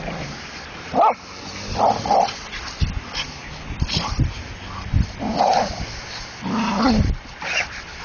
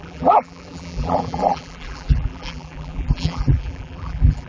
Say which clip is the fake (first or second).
second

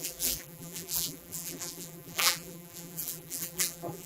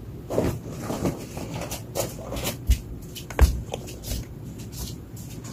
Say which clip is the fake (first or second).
first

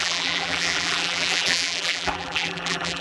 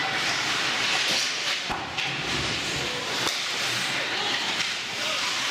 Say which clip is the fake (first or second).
first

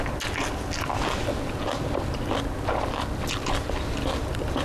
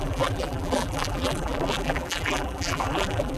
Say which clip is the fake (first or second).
second